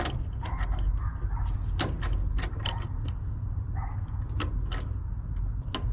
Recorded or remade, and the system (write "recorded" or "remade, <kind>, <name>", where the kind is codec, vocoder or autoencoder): recorded